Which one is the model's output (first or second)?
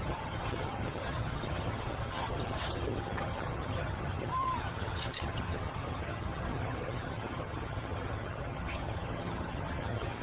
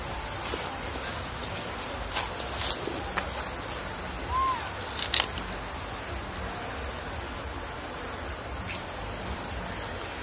first